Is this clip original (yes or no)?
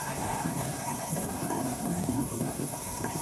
no